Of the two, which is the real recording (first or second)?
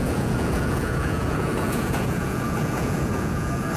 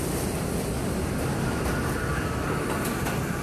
second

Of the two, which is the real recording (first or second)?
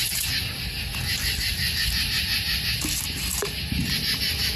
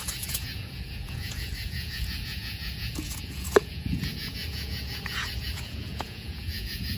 first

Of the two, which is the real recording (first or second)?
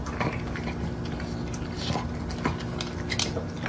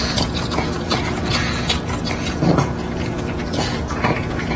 first